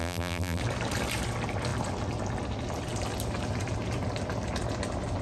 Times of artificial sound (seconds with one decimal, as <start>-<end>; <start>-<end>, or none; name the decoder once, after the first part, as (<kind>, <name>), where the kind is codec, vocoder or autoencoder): 0.0-0.6 (vocoder, BigVGAN v2)